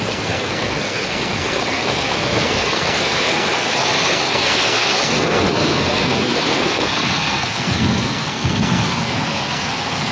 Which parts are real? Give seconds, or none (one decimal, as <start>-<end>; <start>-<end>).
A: none